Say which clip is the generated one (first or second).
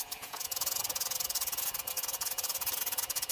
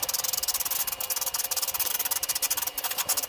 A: first